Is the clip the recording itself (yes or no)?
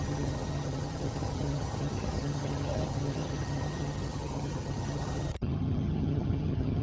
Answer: no